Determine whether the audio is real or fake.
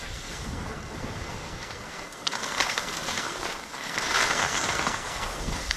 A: fake